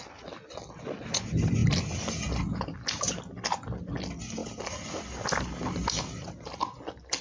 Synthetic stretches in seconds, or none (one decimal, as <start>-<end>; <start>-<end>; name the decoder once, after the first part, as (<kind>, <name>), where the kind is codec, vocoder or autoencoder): none